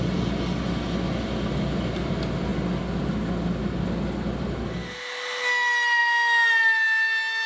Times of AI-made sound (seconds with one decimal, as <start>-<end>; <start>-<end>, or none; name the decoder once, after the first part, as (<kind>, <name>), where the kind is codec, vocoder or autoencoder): none